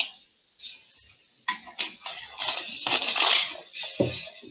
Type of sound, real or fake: real